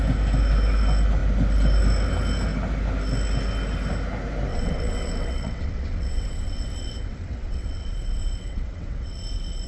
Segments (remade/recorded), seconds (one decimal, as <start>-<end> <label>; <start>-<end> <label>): 0.0-4.5 recorded; 4.5-9.7 remade

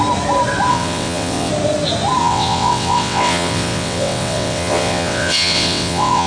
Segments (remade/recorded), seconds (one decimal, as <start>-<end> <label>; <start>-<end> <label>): 0.0-0.7 recorded; 0.7-1.5 remade; 1.5-2.2 recorded; 2.2-6.3 remade

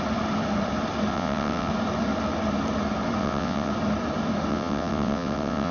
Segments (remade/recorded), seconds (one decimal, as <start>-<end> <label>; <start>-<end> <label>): 0.0-1.1 recorded; 1.1-1.7 remade; 1.7-3.2 recorded; 3.2-3.7 remade; 3.7-4.5 recorded; 4.5-5.7 remade

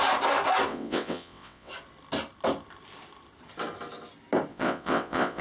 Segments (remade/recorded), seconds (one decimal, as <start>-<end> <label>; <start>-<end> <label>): 0.0-0.7 recorded; 0.7-1.7 remade; 1.7-4.5 recorded; 4.5-5.4 remade